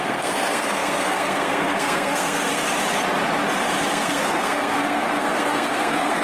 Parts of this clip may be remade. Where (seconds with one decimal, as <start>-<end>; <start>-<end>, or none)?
0.0-2.6; 3.9-6.2